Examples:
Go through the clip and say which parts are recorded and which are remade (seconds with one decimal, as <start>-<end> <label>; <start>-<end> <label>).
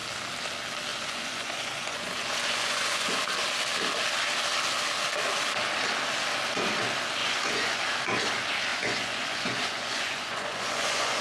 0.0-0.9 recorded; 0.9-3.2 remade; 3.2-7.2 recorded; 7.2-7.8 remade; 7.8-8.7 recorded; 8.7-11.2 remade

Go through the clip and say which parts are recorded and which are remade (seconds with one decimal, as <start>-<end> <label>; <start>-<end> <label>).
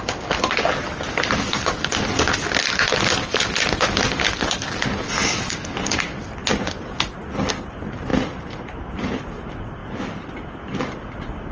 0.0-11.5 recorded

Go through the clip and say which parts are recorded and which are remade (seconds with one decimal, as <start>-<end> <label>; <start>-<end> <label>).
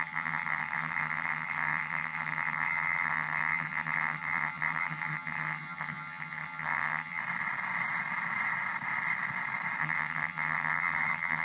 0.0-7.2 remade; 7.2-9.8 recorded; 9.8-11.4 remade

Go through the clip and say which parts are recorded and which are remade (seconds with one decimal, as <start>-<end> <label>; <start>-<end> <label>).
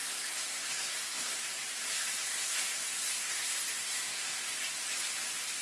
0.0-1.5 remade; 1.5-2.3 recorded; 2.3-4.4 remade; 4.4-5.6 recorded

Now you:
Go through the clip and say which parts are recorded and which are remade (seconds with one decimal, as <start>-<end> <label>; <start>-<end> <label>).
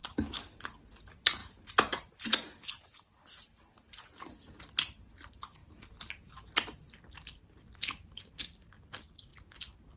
0.0-0.6 remade; 0.6-1.4 recorded; 1.4-2.1 remade; 2.1-5.6 recorded; 5.6-8.4 remade; 8.4-10.0 recorded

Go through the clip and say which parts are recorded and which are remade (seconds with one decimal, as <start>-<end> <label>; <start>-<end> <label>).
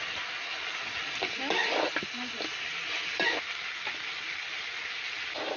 0.0-5.6 recorded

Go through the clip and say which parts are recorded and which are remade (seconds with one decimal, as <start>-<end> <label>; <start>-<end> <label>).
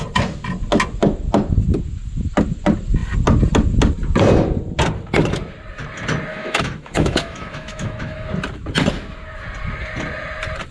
0.0-6.3 recorded; 6.3-8.3 remade; 8.3-10.7 recorded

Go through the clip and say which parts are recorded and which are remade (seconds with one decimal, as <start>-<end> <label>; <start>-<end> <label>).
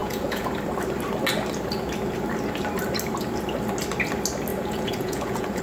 0.0-0.5 remade; 0.5-4.5 recorded; 4.5-5.6 remade